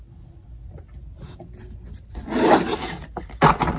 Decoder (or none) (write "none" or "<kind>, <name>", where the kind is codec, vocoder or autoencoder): none